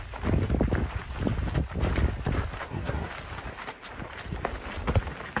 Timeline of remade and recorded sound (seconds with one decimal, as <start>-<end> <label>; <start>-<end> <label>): 0.0-2.6 recorded; 2.6-3.1 remade; 3.1-5.4 recorded